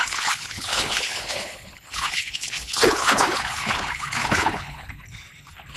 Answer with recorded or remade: remade